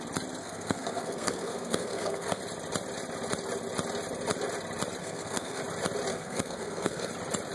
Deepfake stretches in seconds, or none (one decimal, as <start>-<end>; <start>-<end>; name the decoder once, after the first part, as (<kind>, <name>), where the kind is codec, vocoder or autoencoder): 0.4-2.4 (codec, SNAC); 5.0-5.6; 6.1-7.1